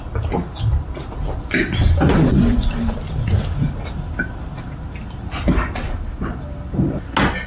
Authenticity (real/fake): real